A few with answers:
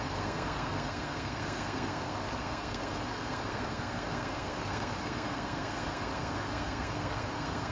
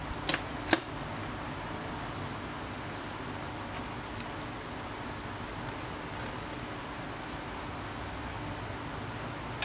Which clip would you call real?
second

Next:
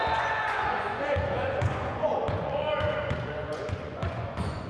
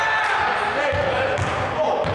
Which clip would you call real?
second